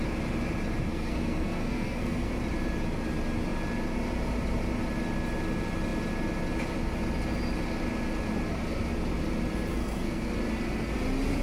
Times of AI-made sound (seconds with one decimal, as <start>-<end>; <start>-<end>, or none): 0.9-2.3; 9.7-10.3